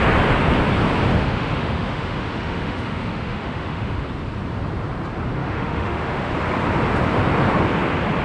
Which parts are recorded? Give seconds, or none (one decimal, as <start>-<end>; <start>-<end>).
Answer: 0.0-1.1; 4.1-5.4; 6.3-8.2